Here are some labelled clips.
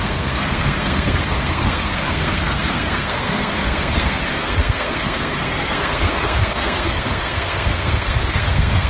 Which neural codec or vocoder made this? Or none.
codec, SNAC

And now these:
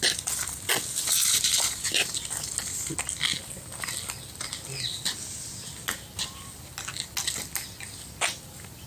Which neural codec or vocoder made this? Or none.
none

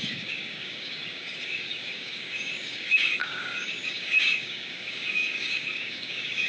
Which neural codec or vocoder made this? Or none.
codec, DAC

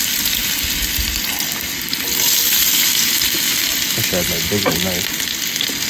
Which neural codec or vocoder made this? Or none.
none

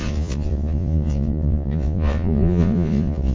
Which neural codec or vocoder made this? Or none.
vocoder, Vocos